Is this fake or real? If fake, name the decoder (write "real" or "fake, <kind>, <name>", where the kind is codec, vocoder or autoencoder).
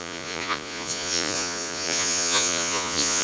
fake, vocoder, Vocos